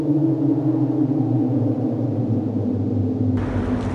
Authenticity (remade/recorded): recorded